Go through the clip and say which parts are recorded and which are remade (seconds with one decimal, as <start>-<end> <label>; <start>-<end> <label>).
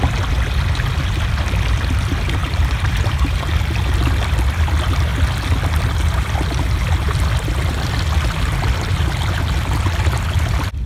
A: 0.0-2.4 recorded; 2.4-3.4 remade; 3.4-10.9 recorded